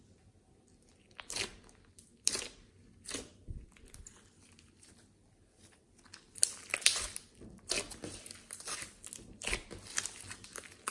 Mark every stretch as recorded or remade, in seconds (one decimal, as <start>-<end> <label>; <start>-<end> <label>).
0.0-10.9 recorded